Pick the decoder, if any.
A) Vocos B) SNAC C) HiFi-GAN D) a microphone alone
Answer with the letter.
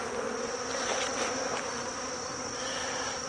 D